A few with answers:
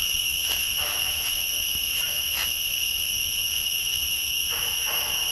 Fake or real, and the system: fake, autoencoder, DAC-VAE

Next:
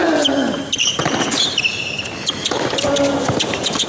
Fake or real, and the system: real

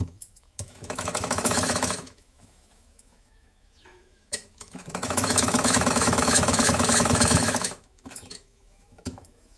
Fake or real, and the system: fake, autoencoder, DAC-VAE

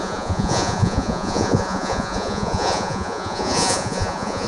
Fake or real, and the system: fake, vocoder, Vocos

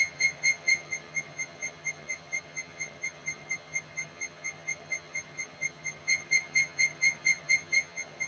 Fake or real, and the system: fake, vocoder, HiFi-GAN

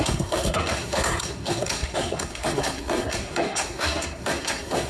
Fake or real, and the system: fake, codec, SNAC